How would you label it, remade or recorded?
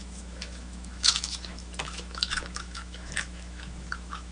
remade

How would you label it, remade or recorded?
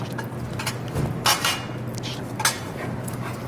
recorded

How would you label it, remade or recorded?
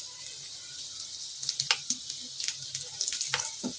recorded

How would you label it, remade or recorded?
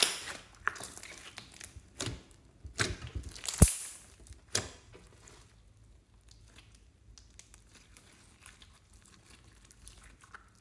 recorded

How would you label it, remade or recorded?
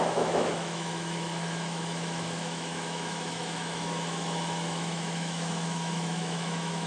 remade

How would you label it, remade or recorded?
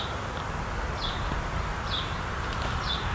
recorded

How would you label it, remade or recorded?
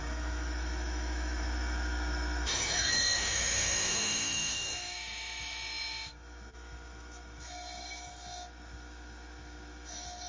remade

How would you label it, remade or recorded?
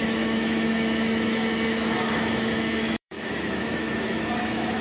remade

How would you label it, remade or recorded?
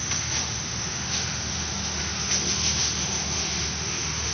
remade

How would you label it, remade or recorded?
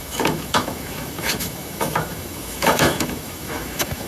remade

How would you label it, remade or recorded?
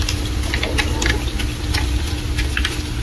recorded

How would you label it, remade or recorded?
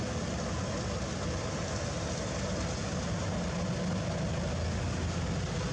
recorded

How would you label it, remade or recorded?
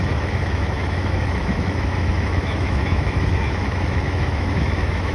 remade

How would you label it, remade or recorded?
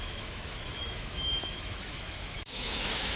remade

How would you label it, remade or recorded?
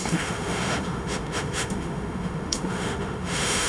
remade